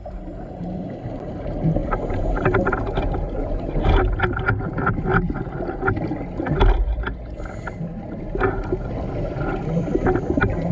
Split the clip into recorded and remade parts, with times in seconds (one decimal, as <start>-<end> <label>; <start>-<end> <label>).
0.0-1.8 recorded; 1.8-2.8 remade; 2.8-10.7 recorded